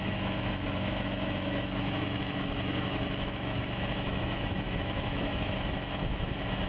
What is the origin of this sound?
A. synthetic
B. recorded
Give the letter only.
A